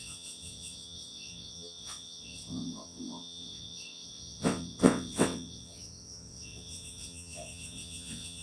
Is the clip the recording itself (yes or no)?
no